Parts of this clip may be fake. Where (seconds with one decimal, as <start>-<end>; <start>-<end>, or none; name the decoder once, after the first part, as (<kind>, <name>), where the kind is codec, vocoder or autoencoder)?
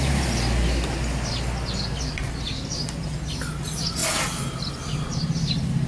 none